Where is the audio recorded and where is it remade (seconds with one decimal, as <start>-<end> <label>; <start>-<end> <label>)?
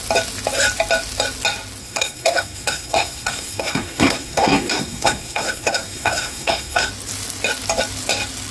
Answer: 0.0-1.8 recorded; 1.8-6.9 remade; 6.9-8.5 recorded